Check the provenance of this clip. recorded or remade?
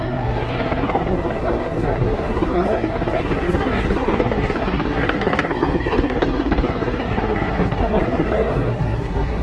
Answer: remade